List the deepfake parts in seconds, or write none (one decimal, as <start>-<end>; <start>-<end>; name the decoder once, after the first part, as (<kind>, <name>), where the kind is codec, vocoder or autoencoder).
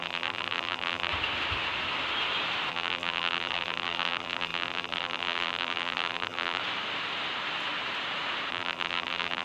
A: 0.0-1.1 (vocoder, BigVGAN v2); 2.7-6.6; 8.5-9.4